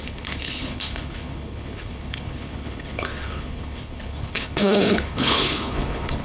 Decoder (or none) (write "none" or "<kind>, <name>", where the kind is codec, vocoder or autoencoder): codec, HILCodec